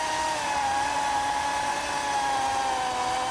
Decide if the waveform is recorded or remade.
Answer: recorded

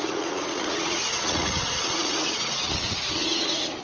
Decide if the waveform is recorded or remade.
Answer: remade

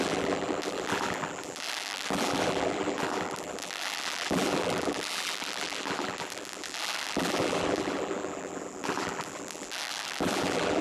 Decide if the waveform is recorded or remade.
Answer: remade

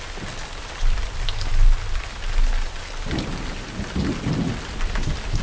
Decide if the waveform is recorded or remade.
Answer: recorded